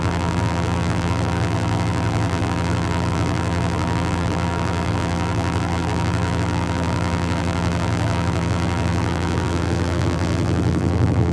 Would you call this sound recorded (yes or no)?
no